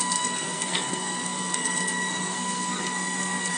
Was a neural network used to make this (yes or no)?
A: yes